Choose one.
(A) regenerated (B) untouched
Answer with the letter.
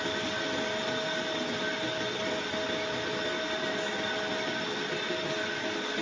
B